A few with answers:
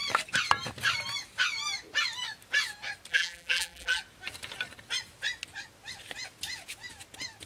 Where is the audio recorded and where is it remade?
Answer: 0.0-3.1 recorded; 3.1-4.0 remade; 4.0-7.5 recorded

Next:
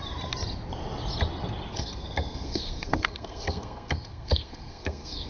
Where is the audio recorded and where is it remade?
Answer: 0.0-1.7 recorded; 1.7-5.3 remade

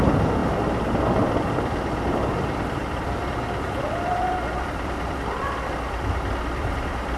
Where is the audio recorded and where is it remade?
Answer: 0.0-2.8 recorded; 2.8-7.2 remade

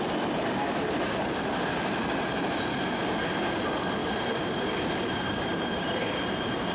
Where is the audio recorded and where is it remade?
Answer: 0.0-4.0 recorded; 4.0-6.7 remade

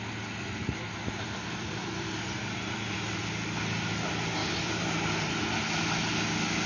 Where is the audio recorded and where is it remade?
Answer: 0.0-0.6 recorded; 0.6-2.6 remade; 2.6-4.4 recorded; 4.4-5.3 remade; 5.3-6.7 recorded